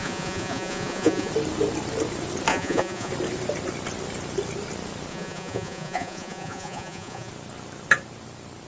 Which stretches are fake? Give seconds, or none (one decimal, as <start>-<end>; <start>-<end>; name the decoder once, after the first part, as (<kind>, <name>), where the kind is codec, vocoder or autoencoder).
0.0-1.3 (vocoder, Vocos); 2.5-3.1; 5.1-7.3